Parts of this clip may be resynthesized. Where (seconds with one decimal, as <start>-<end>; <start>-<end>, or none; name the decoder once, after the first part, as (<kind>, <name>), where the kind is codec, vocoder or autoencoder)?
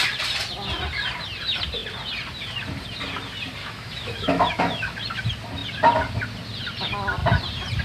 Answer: 3.6-4.9 (autoencoder, DAC-VAE)